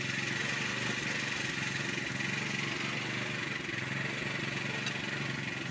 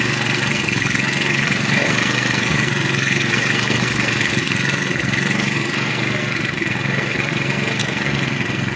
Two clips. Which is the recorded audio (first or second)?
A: first